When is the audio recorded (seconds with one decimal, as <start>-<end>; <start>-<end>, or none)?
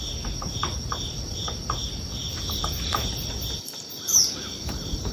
0.0-5.1